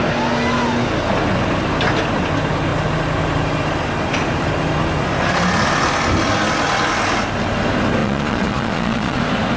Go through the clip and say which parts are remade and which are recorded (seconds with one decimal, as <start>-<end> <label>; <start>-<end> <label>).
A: 0.0-8.0 recorded; 8.0-9.2 remade; 9.2-9.6 recorded